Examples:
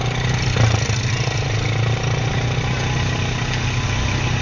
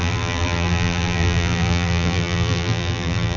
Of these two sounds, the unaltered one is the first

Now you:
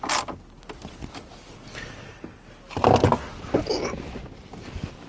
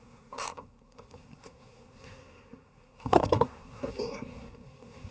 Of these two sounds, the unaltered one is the first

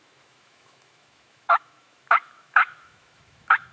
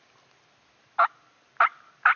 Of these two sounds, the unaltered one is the second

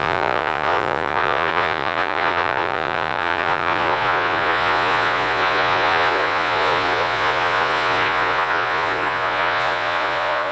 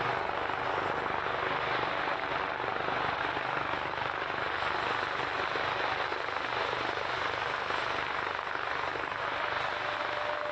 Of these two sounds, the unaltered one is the second